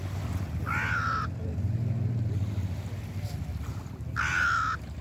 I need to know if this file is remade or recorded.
recorded